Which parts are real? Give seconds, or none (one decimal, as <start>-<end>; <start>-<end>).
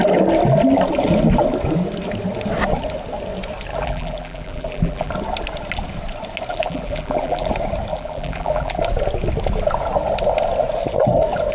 0.0-3.7; 5.1-6.5; 7.5-7.9; 8.8-11.5